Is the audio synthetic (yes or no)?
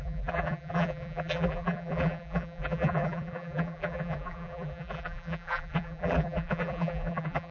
yes